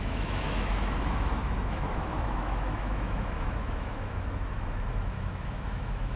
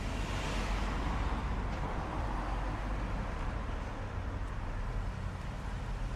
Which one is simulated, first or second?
first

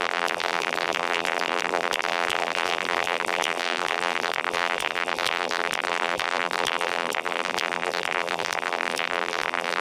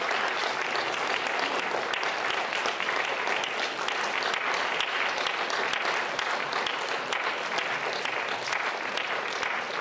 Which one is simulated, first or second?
first